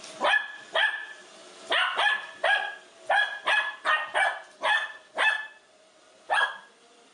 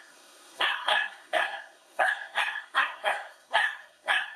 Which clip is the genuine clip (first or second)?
first